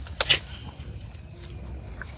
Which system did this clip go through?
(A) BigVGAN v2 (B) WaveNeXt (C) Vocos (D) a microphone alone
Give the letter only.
D